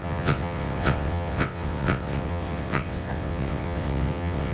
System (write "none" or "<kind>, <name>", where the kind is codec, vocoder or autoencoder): vocoder, WaveNeXt